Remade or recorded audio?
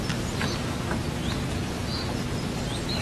recorded